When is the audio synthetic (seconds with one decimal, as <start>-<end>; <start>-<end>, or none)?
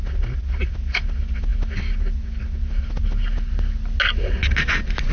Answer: none